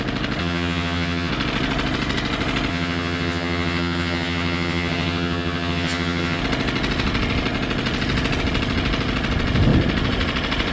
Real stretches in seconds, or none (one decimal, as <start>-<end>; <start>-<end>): 0.0-0.4; 1.3-2.7; 6.4-10.7